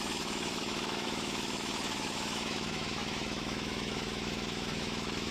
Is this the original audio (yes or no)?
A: no